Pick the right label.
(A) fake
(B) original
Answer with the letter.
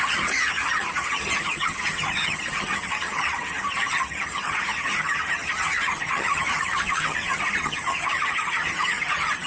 A